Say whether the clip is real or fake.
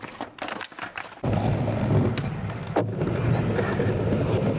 real